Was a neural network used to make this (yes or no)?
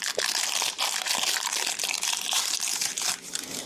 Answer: yes